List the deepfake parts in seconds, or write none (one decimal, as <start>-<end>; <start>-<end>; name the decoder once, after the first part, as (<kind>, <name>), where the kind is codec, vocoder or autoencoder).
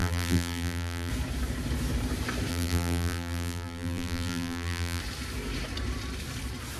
0.0-1.1 (vocoder, BigVGAN v2); 2.5-5.0